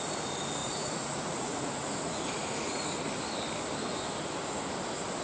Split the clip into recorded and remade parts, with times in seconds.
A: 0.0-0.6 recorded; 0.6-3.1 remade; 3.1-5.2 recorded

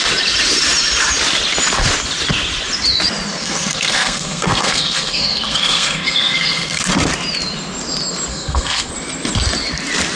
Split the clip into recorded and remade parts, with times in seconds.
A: 0.0-3.4 recorded; 3.4-6.8 remade; 6.8-8.3 recorded; 8.3-8.9 remade; 8.9-10.2 recorded

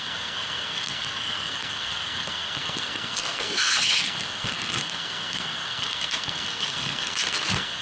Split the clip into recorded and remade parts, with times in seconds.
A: 0.0-7.8 remade

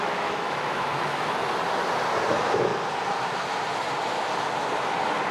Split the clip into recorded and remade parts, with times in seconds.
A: 0.0-1.4 remade; 1.4-2.3 recorded; 2.3-2.7 remade; 2.7-5.3 recorded

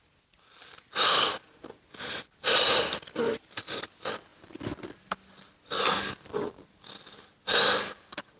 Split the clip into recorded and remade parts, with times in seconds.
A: 0.0-8.4 recorded

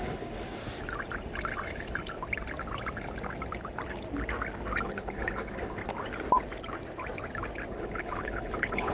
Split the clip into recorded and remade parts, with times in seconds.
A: 0.0-0.6 remade; 0.6-4.8 recorded; 4.8-5.8 remade; 5.8-7.7 recorded; 7.7-8.9 remade